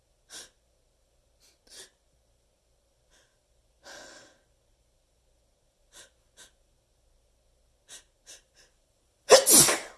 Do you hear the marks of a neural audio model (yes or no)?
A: no